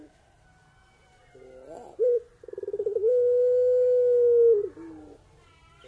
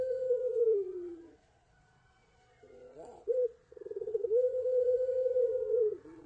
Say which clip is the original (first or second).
first